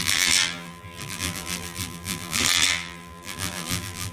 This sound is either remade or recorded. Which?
remade